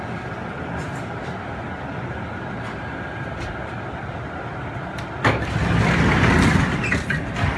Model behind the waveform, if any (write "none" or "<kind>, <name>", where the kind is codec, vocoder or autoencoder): none